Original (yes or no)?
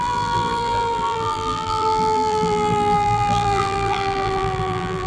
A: no